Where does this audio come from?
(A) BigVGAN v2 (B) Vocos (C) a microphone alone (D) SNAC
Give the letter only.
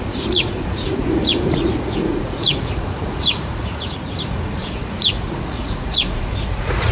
B